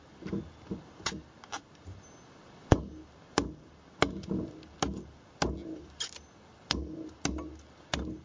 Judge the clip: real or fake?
real